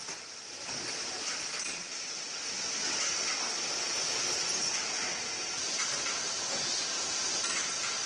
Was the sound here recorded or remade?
recorded